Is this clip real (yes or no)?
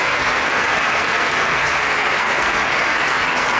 no